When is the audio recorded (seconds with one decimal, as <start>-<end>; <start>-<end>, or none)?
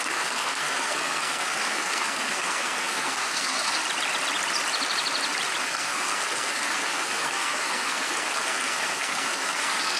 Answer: 3.8-5.6